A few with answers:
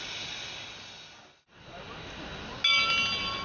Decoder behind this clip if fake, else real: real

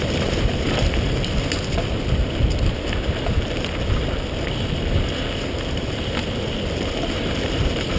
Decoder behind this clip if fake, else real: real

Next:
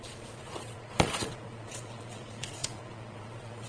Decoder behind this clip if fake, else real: fake, vocoder, Vocos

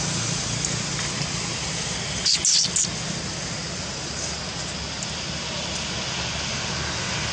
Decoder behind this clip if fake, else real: real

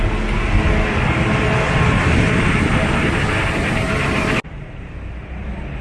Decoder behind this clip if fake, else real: real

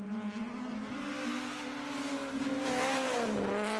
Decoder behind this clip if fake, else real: real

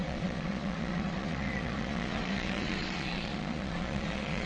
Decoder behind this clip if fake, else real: fake, vocoder, Vocos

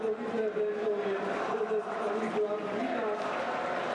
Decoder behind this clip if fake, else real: real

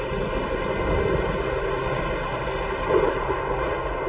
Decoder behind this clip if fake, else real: real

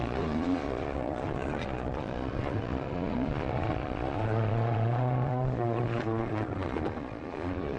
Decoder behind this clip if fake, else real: fake, vocoder, Vocos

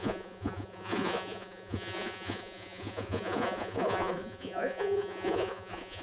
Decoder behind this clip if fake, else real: fake, vocoder, Vocos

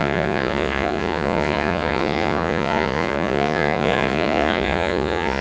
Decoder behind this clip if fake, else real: fake, vocoder, Vocos